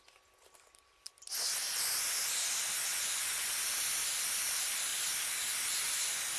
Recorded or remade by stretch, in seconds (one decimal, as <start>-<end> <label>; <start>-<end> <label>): 0.0-2.9 recorded; 2.9-3.5 remade; 3.5-6.4 recorded